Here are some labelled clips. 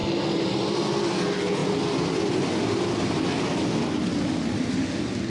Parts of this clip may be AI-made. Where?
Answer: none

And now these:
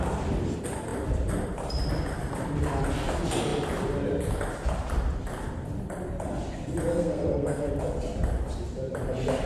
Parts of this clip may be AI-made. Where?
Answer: 6.9-7.7 (codec, SNAC)